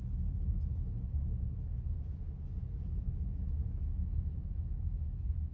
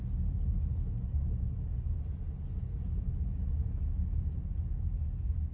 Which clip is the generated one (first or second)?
first